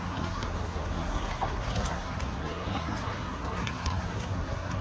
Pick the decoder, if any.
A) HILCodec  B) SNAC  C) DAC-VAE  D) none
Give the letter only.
B